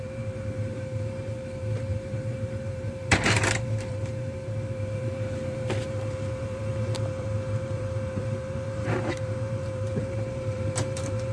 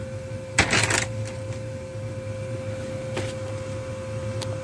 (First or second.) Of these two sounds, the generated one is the first